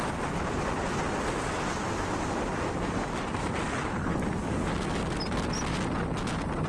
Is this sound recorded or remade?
recorded